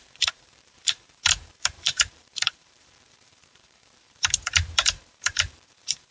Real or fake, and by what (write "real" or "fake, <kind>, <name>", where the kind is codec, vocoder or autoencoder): fake, vocoder, BigVGAN v2